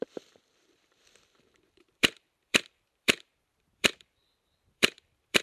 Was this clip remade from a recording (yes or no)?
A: yes